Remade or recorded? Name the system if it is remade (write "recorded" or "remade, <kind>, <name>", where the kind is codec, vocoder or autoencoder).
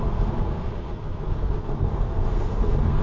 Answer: remade, codec, SNAC